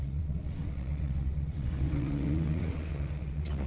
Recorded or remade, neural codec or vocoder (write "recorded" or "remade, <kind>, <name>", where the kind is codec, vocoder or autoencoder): remade, vocoder, WaveNeXt